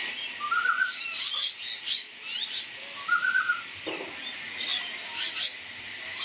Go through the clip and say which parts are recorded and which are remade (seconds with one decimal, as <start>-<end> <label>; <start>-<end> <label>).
0.0-6.2 recorded